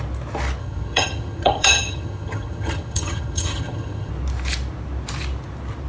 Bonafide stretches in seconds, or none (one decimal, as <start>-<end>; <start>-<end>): 0.0-0.6; 4.1-5.9